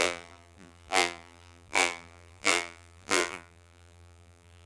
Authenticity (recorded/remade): remade